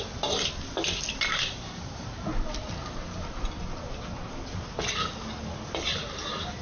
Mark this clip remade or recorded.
recorded